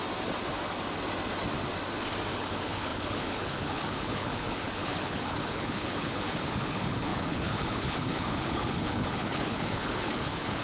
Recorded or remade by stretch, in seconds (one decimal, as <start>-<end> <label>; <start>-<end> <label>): 0.0-2.3 recorded; 2.3-10.6 remade